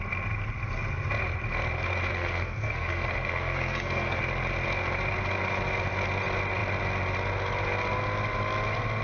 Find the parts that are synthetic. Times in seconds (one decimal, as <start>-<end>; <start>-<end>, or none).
2.1-4.2